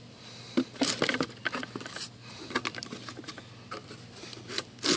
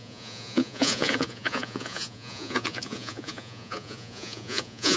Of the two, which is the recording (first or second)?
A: first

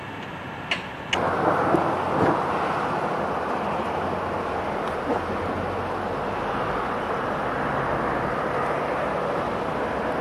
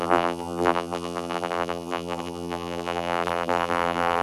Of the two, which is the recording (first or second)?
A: first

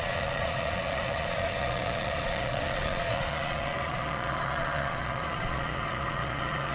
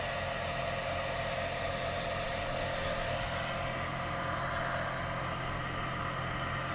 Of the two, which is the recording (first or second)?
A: second